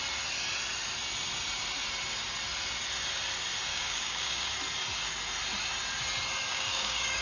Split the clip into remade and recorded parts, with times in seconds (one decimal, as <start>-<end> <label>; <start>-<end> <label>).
0.0-3.7 recorded; 3.7-4.5 remade; 4.5-6.5 recorded; 6.5-7.2 remade